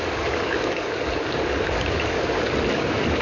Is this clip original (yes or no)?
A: no